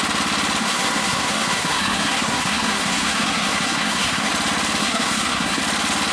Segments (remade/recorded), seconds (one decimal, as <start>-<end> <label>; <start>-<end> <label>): 0.0-0.6 recorded; 0.6-4.3 remade; 4.3-4.8 recorded; 4.8-5.6 remade; 5.6-6.1 recorded